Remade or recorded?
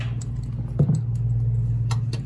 recorded